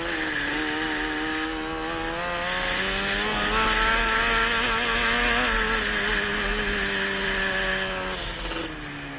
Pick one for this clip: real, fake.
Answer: real